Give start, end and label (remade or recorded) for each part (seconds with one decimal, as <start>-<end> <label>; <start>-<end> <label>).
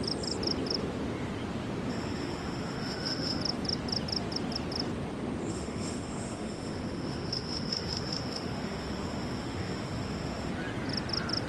0.0-1.9 recorded; 1.9-3.4 remade; 3.4-5.5 recorded; 5.5-10.5 remade; 10.5-11.5 recorded